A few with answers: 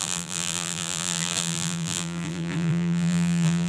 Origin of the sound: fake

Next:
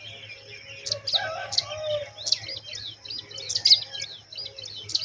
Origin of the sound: real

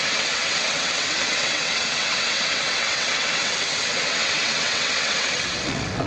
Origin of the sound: fake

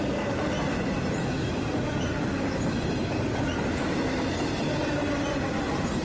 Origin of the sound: real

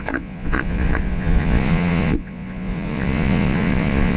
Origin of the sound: fake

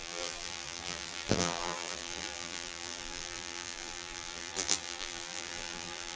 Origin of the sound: fake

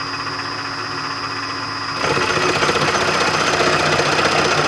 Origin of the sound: real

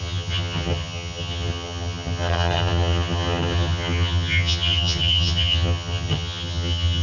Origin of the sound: fake